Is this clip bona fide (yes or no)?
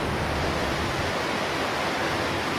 yes